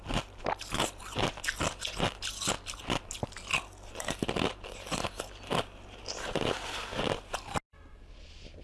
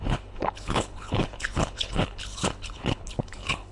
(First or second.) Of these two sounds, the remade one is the second